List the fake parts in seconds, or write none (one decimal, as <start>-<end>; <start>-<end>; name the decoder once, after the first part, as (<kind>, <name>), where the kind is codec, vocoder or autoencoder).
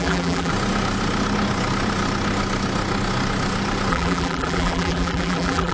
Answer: 0.0-0.5 (vocoder, BigVGAN v2); 3.9-5.7